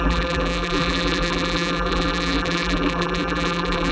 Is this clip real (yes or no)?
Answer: no